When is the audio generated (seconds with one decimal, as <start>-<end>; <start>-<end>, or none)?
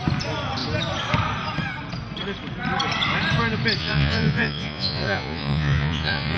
3.8-6.4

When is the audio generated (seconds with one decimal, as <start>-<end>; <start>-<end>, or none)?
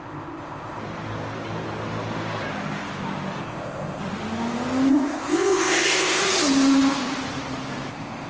0.0-0.8; 3.4-4.0; 4.9-6.2; 7.9-8.3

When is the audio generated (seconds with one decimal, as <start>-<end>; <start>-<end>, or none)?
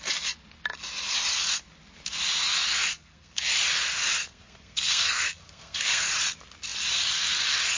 2.9-3.4; 4.2-6.0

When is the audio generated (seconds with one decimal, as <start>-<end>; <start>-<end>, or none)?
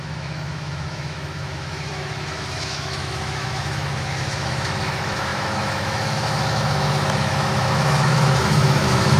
0.0-9.2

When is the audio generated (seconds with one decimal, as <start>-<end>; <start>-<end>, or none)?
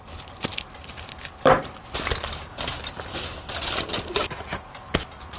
none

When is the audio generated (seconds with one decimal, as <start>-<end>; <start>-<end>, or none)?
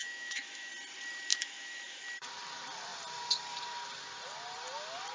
0.0-0.7; 1.3-2.0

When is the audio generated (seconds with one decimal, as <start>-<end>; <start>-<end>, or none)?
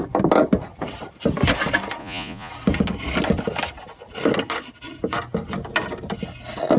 2.0-2.5